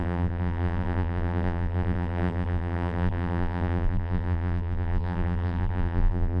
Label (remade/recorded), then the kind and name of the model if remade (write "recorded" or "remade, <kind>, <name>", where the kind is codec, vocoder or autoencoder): remade, vocoder, BigVGAN v2